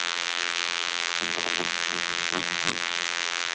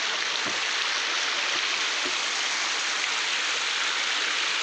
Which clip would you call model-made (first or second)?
first